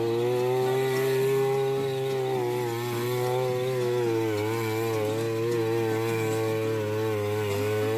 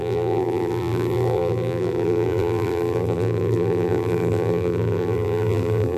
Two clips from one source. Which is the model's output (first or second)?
second